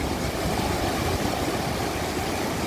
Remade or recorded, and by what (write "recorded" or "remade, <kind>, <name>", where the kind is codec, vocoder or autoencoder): recorded